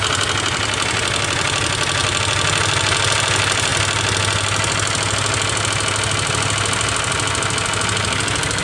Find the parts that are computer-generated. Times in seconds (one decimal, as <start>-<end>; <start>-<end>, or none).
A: none

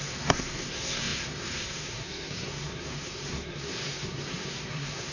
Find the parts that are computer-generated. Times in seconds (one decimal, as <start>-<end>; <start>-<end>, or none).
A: 0.0-5.1

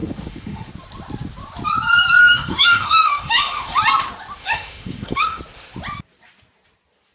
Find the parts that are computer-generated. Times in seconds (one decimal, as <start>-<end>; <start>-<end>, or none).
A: 0.0-0.7; 2.2-3.8; 4.4-5.4

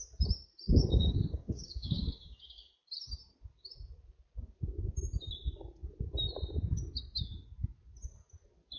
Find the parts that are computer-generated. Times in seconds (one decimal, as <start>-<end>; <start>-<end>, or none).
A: 0.7-2.7